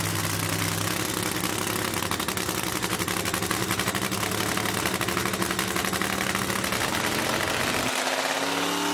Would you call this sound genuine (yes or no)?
yes